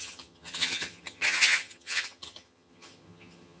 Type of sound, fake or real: fake